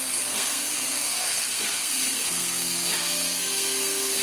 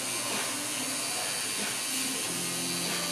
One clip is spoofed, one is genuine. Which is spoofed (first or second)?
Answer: first